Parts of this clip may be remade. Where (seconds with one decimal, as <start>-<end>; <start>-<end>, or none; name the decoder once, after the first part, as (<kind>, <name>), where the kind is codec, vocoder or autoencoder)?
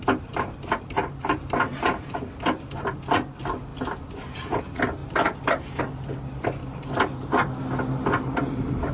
5.0-5.8 (vocoder, BigVGAN v2); 6.6-7.6